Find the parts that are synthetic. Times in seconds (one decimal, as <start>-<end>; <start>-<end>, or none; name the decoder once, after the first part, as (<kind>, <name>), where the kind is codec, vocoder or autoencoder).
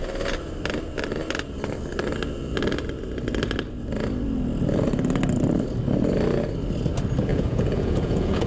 7.3-8.5 (vocoder, Vocos)